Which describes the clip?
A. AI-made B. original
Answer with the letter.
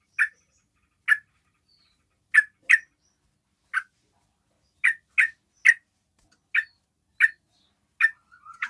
B